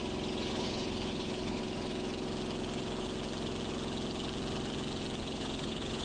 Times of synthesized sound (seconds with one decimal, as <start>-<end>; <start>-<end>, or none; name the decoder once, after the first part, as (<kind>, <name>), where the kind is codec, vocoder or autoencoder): 0.5-1.6 (codec, HILCodec); 5.2-6.0